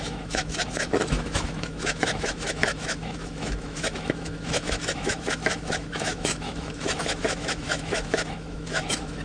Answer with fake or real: fake